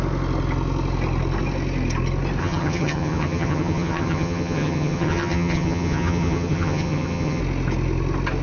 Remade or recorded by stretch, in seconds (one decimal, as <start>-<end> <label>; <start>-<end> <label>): 0.0-2.4 recorded; 2.4-7.4 remade; 7.4-8.4 recorded